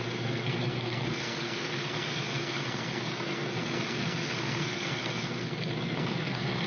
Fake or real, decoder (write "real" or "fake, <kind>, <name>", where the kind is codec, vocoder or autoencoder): fake, codec, SNAC